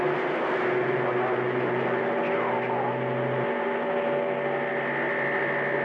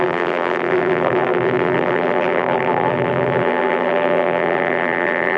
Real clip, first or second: first